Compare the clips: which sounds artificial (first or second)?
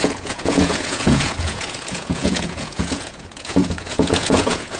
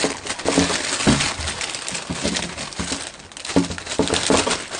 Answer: first